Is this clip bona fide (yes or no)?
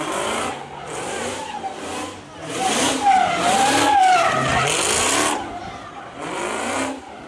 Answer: yes